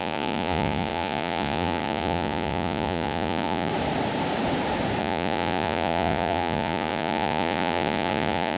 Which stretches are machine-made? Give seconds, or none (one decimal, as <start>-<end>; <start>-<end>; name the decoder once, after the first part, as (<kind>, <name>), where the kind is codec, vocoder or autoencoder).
0.0-3.7 (vocoder, Vocos); 5.0-8.6

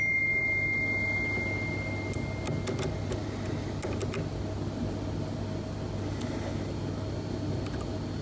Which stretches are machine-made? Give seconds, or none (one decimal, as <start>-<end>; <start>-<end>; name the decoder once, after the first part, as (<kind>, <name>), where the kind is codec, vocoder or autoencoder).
none

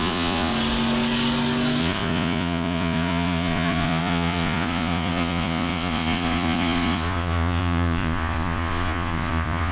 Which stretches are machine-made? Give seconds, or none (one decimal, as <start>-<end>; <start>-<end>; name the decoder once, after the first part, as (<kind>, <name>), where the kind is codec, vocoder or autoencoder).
0.0-0.5 (vocoder, Vocos); 1.8-9.7